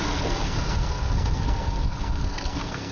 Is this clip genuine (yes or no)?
no